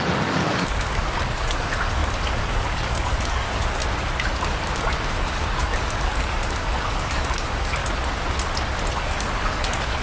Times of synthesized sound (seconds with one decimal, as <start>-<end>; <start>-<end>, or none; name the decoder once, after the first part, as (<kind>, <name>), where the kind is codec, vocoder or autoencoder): 0.0-3.8 (codec, DAC); 4.4-7.8; 9.0-10.0